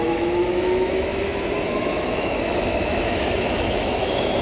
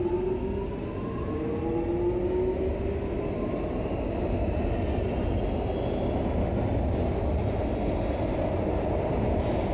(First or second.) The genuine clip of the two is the second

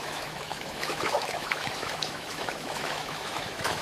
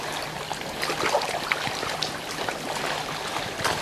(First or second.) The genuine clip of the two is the second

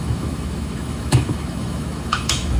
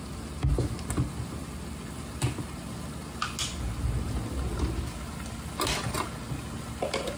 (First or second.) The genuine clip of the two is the second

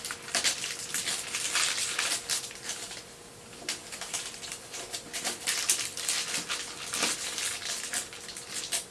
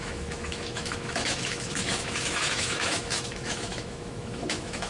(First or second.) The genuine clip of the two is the first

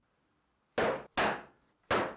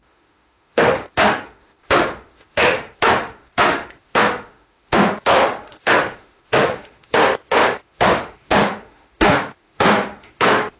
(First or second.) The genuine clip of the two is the first